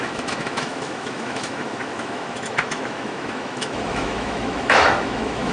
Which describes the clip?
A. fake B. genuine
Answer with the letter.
A